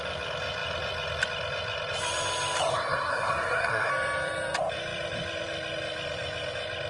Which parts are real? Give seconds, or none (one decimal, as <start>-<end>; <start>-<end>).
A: 0.0-2.7; 3.9-6.9